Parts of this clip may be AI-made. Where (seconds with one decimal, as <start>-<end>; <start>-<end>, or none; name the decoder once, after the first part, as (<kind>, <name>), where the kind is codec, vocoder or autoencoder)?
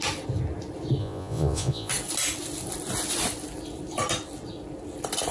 1.0-1.9 (vocoder, Vocos)